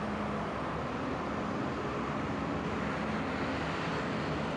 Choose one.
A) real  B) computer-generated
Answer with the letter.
A